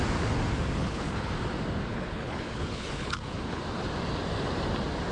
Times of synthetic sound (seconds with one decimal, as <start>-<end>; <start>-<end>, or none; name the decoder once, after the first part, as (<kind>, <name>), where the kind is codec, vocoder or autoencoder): 0.8-1.3 (codec, HILCodec); 1.9-3.6